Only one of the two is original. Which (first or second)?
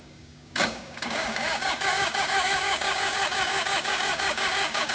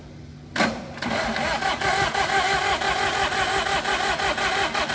second